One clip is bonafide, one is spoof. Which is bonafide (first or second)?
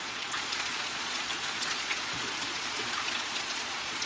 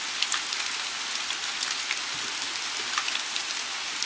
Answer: second